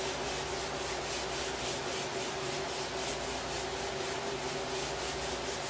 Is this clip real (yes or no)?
yes